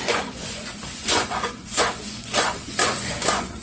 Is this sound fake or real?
fake